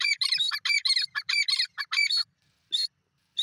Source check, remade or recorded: recorded